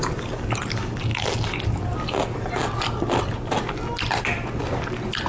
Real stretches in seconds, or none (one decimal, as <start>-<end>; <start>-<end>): 0.0-5.3